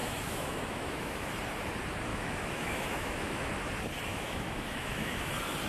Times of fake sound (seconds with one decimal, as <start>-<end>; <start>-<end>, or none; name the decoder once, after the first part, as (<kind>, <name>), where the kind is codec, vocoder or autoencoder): 0.0-1.3 (autoencoder, DAC-VAE); 2.1-3.5; 4.1-5.3